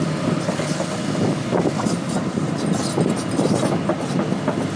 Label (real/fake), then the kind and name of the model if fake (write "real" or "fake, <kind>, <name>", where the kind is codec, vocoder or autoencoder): real